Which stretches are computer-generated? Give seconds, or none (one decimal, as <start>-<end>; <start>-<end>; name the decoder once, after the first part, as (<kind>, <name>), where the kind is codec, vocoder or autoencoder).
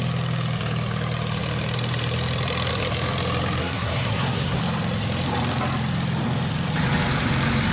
3.6-4.6 (codec, SNAC)